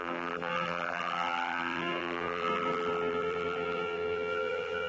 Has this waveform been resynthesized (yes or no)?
yes